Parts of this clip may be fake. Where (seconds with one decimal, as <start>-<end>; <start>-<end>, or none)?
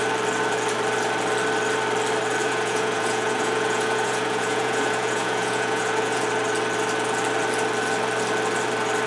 2.4-6.2